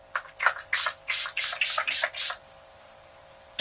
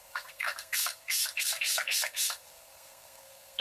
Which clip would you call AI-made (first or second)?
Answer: second